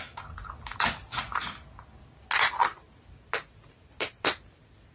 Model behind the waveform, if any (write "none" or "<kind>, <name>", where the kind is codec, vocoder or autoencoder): none